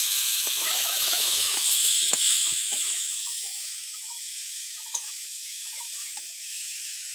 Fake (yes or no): yes